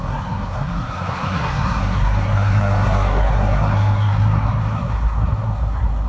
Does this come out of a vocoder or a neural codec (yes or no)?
yes